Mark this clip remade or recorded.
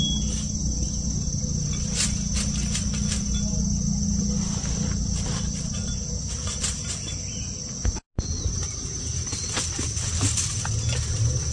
recorded